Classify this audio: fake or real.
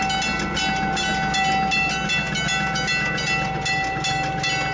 real